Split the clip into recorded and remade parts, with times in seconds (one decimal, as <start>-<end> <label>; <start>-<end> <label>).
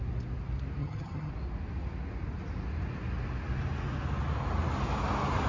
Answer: 0.0-0.8 recorded; 0.8-1.3 remade; 1.3-5.5 recorded